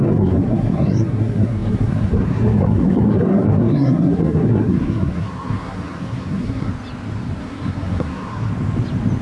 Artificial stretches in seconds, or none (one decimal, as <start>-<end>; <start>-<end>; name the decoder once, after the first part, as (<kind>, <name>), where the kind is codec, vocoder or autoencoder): 0.0-6.7 (codec, SNAC); 7.4-8.5